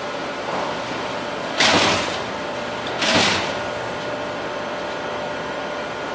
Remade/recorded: remade